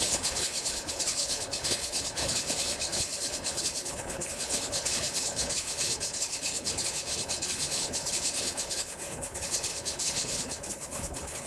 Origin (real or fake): fake